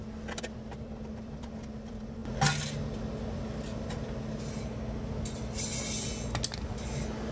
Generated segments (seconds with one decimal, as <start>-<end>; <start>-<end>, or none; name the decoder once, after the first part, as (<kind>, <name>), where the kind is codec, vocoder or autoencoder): none